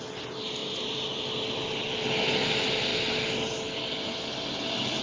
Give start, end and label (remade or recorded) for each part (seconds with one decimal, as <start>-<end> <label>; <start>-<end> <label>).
0.0-0.6 recorded; 0.6-1.2 remade; 1.2-2.9 recorded; 2.9-3.6 remade; 3.6-5.0 recorded